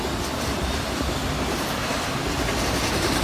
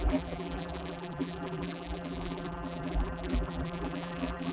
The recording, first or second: first